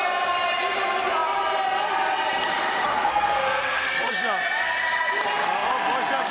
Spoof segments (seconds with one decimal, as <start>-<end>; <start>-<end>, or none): 2.9-4.1